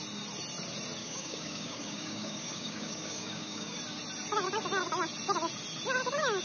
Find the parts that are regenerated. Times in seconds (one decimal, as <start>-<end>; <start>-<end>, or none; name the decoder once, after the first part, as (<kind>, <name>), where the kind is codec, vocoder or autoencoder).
1.0-3.8 (codec, DAC)